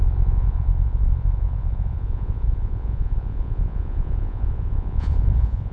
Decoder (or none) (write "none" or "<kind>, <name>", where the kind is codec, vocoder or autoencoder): vocoder, Vocos